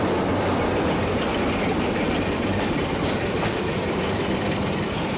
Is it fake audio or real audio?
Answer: fake